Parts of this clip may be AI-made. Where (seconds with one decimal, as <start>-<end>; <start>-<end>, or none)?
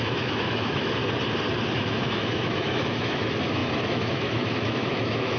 0.0-1.0; 1.7-5.4